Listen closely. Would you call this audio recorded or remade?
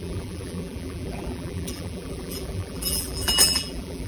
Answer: remade